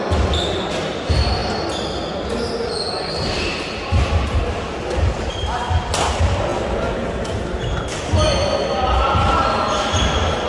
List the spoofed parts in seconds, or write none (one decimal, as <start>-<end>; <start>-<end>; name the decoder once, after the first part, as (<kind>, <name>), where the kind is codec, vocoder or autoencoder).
none